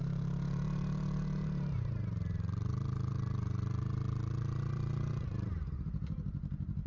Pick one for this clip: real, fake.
fake